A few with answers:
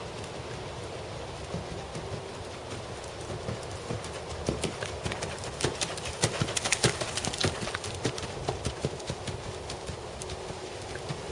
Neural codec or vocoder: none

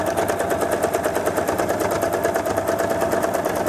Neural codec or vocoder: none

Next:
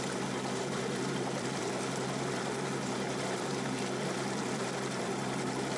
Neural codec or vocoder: none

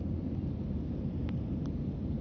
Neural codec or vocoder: none